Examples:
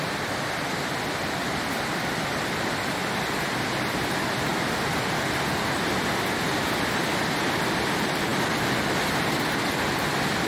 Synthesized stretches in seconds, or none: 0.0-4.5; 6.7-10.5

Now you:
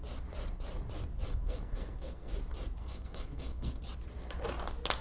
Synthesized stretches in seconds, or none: 1.3-2.3; 2.8-3.8

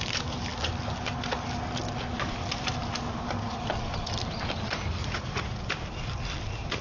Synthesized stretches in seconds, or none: 5.0-5.6

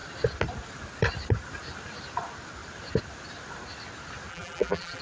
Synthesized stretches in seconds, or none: 4.3-5.0

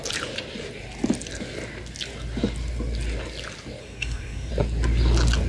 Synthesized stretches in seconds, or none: 3.8-4.5